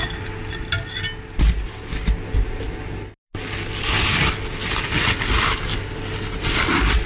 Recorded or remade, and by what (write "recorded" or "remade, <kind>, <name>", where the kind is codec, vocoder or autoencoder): recorded